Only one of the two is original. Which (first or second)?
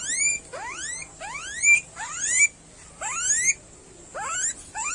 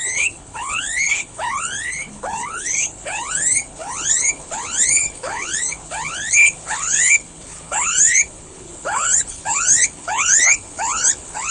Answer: first